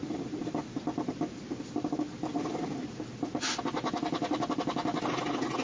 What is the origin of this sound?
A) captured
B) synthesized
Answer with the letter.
A